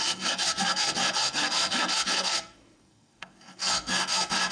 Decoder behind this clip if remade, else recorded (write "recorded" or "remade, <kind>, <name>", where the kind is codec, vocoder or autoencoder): remade, codec, SNAC